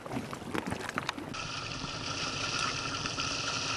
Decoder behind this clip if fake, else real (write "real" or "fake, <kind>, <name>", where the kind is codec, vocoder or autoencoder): real